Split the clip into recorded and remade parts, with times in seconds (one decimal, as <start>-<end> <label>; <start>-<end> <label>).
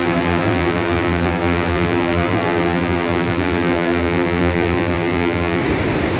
0.0-5.6 remade; 5.6-6.2 recorded